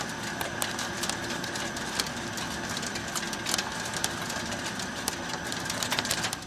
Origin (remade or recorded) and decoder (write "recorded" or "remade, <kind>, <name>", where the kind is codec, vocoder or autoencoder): recorded